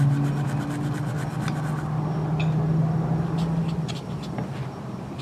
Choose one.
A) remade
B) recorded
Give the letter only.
B